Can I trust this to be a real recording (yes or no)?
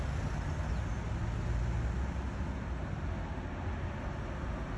yes